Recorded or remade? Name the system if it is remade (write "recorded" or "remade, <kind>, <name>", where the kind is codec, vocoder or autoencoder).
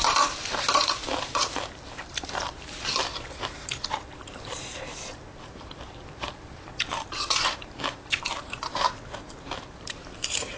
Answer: remade, vocoder, BigVGAN v2